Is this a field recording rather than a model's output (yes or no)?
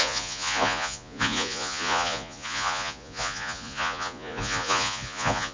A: no